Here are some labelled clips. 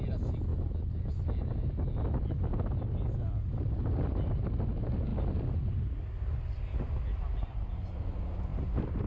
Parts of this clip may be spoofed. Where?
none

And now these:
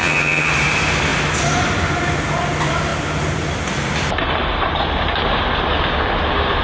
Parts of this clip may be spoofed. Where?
0.0-0.5

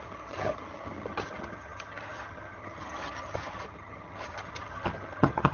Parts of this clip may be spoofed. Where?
0.0-5.5

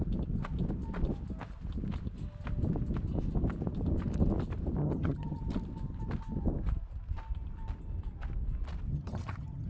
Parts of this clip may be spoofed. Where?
4.8-5.4; 8.9-9.7

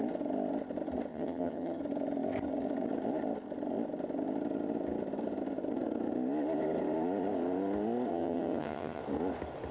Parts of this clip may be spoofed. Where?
1.1-1.8; 8.1-9.0

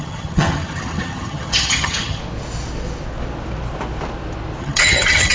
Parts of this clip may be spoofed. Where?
0.0-2.2; 4.6-5.3

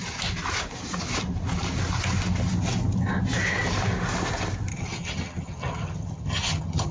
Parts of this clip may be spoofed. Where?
4.7-6.9